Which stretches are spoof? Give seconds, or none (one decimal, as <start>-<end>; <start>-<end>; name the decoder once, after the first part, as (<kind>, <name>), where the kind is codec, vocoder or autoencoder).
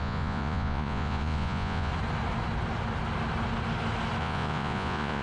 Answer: 0.0-1.9 (vocoder, Vocos); 4.2-5.2